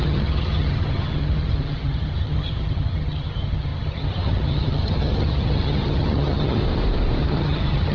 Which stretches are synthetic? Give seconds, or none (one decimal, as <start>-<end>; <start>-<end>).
0.0-6.6; 7.2-7.9